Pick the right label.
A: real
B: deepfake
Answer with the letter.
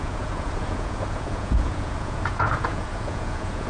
B